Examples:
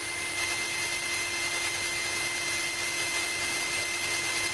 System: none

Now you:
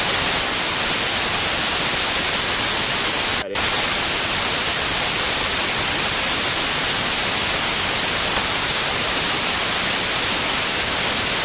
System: none